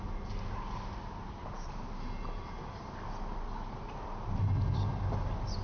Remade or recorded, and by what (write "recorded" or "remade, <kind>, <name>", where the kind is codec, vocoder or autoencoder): recorded